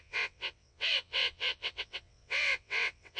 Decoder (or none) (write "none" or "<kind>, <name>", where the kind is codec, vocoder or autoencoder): vocoder, WaveNeXt